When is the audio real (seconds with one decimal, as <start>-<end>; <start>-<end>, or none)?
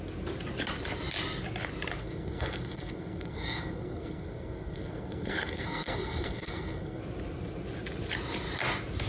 0.0-2.0; 7.0-9.1